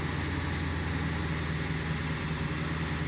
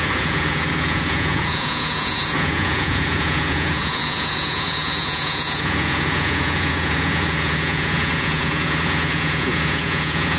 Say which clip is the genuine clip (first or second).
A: first